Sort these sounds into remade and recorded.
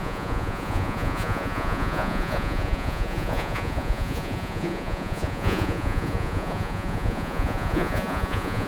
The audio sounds remade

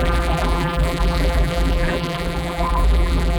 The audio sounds remade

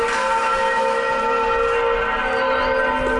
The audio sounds recorded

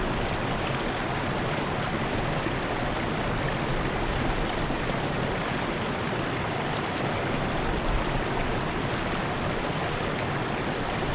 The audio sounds recorded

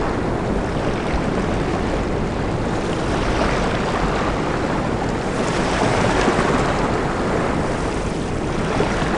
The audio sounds recorded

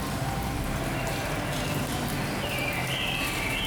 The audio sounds recorded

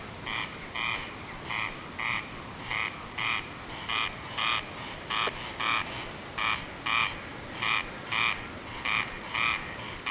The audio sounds recorded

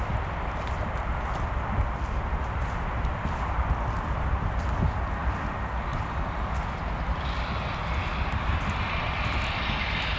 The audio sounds recorded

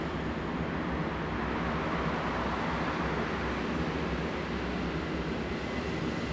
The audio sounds recorded